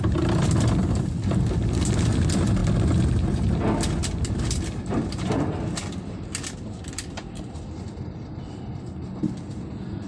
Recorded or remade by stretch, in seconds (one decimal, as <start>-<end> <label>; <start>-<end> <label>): 0.0-10.1 recorded